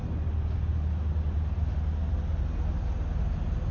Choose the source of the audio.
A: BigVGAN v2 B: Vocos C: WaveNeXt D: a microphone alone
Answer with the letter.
D